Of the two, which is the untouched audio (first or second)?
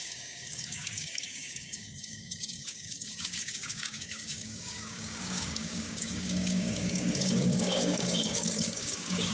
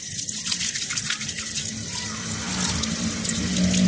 second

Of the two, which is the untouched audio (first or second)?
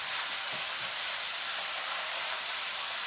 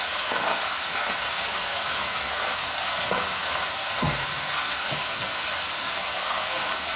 first